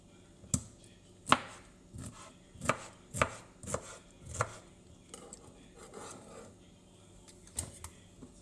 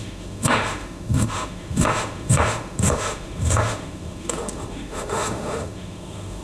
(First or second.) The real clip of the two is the first